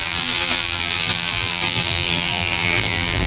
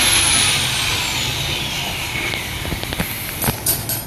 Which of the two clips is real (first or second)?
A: second